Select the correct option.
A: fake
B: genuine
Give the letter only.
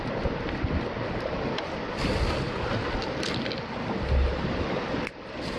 B